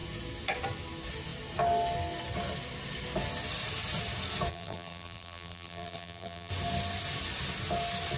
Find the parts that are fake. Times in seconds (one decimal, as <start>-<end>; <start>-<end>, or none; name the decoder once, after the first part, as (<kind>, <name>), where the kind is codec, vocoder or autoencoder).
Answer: 4.5-6.5 (vocoder, BigVGAN v2)